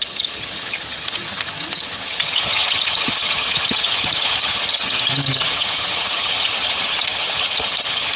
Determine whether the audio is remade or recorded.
remade